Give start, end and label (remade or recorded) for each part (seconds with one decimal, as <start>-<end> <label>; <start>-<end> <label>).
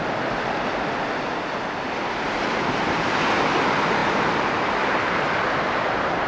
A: 0.0-6.3 recorded